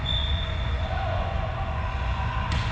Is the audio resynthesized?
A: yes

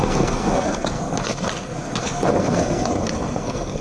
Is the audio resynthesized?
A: yes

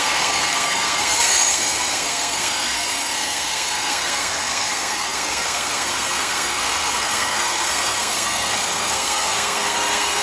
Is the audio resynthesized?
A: yes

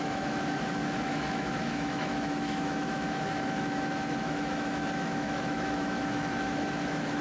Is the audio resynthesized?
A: yes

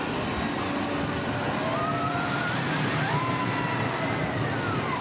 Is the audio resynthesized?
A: no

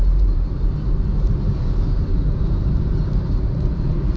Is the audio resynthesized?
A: yes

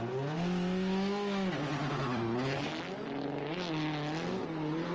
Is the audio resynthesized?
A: no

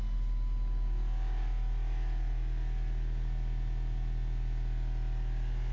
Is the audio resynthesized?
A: no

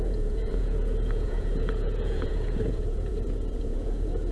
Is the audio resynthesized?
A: yes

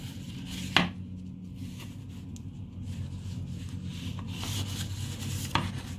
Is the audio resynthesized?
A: no